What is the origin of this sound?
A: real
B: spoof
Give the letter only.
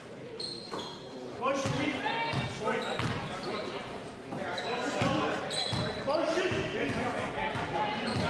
A